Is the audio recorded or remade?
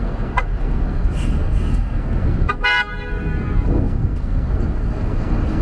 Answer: remade